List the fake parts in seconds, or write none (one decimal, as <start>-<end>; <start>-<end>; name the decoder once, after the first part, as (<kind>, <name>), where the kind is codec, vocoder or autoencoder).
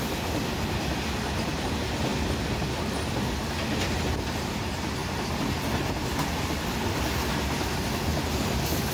none